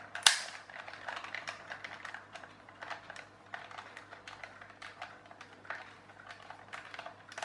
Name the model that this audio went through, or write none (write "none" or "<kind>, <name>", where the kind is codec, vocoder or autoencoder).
none